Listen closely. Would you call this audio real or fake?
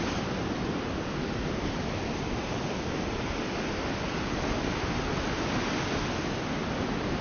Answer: real